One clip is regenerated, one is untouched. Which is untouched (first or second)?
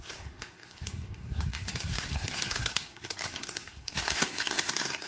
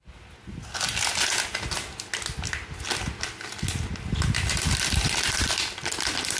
second